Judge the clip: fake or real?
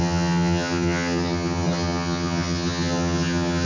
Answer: fake